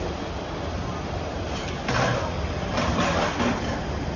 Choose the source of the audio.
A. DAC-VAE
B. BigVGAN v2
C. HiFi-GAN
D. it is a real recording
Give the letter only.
B